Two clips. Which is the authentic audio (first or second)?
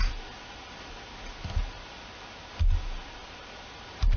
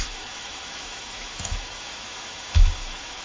first